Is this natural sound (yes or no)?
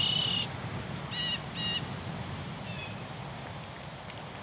yes